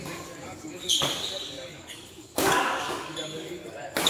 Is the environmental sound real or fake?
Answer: fake